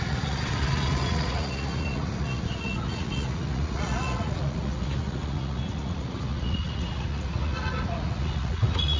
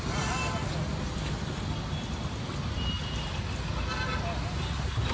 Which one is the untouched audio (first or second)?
second